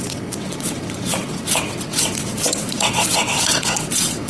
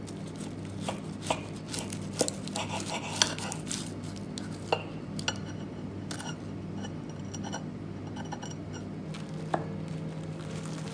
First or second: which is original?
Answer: second